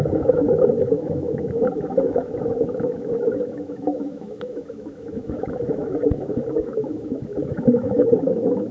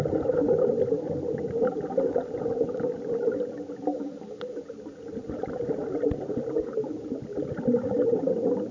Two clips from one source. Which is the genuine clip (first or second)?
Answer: second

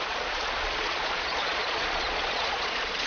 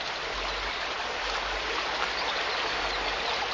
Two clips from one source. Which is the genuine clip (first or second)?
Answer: second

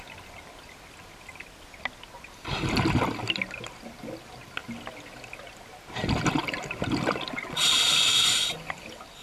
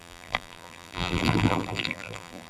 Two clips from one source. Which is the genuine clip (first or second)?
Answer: first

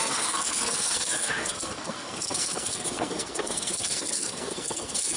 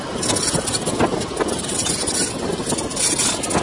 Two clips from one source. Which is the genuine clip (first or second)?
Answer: second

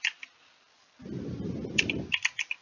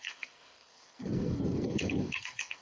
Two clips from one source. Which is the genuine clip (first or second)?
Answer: first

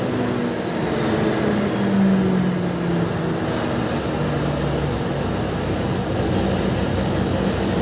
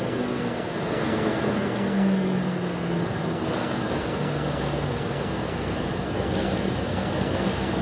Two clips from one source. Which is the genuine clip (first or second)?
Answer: first